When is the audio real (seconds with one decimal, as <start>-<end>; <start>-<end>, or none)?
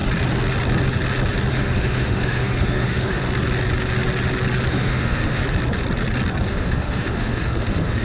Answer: 0.0-1.5; 3.2-4.7; 5.4-6.5